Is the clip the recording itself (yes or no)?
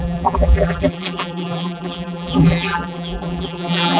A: no